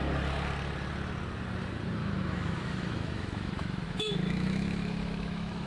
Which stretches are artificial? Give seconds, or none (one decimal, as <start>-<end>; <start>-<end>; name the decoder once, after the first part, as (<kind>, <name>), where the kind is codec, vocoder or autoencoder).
2.0-5.7 (autoencoder, DAC-VAE)